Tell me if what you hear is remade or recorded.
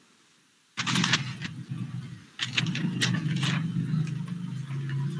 recorded